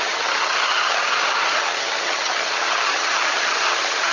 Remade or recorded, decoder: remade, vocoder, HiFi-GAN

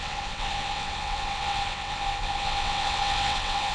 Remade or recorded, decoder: remade, vocoder, WaveNeXt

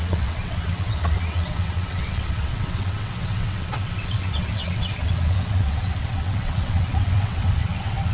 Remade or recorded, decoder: remade, vocoder, WaveNeXt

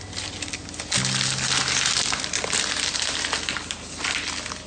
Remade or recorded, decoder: recorded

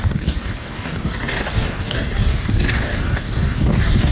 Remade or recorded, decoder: remade, codec, DAC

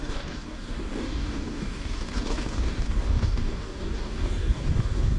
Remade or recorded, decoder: remade, codec, DAC